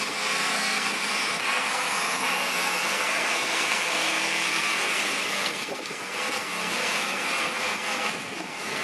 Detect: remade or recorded remade